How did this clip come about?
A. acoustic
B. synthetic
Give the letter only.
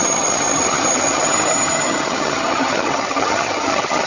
B